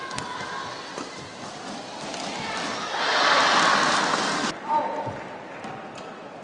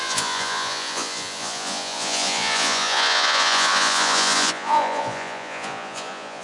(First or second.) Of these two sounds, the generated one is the second